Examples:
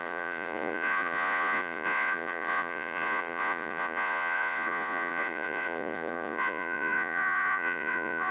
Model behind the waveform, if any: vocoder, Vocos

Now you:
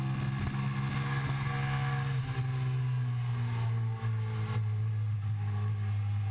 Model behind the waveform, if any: none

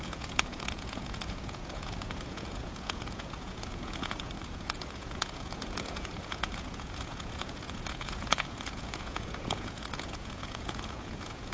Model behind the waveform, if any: vocoder, Vocos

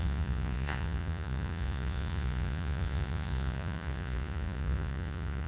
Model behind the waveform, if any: vocoder, Vocos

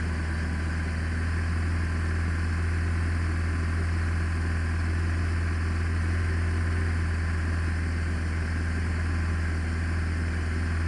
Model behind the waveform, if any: none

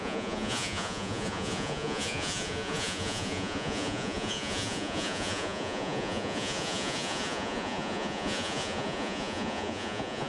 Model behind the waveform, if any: vocoder, Vocos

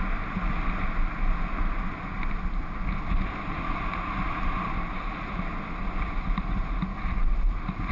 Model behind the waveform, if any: none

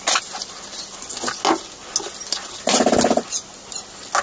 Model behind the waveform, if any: none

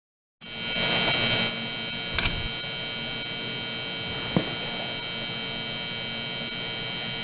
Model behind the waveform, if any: none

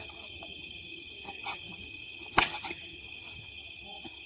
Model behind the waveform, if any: vocoder, HiFi-GAN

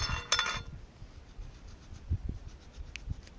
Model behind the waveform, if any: none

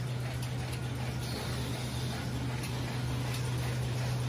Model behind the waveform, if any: none